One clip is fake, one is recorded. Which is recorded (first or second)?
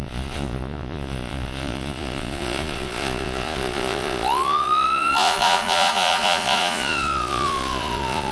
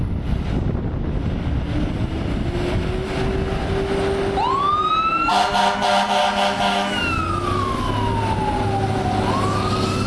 second